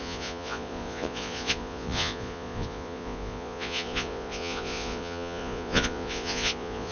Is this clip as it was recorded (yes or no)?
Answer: no